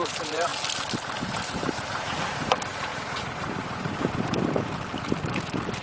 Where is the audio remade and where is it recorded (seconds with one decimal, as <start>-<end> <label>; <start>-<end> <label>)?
0.0-0.5 remade; 0.5-1.2 recorded; 1.2-2.9 remade; 2.9-5.2 recorded; 5.2-5.8 remade